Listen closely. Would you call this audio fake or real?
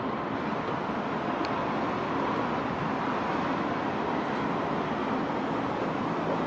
real